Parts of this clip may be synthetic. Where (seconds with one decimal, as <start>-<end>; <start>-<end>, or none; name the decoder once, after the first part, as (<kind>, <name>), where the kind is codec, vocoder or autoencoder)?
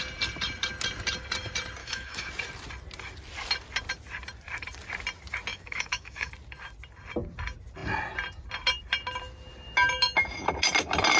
1.8-2.3 (autoencoder, DAC-VAE); 5.5-6.3